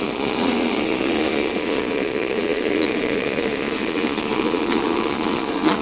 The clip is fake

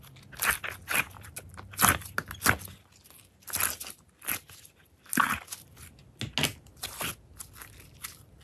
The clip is real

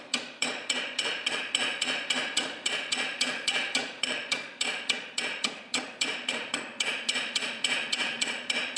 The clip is fake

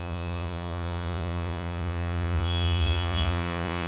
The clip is fake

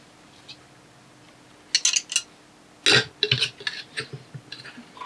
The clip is real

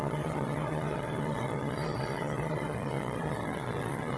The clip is fake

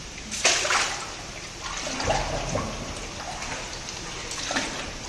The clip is real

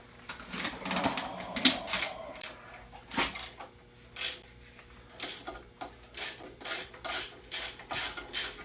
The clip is real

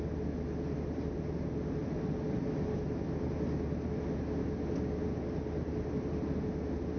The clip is real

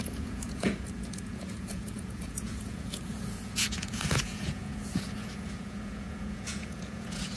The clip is fake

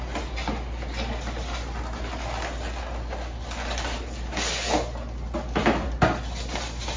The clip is real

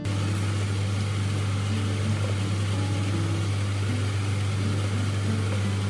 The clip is real